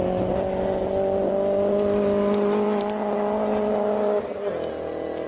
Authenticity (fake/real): real